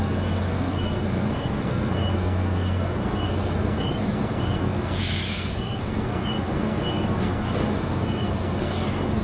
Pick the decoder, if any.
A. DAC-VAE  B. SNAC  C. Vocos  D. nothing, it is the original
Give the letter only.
B